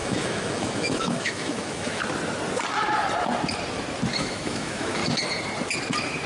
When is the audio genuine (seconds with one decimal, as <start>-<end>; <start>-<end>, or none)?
2.0-4.2; 5.0-6.3